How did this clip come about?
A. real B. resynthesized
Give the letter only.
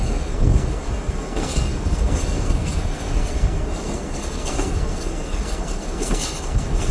B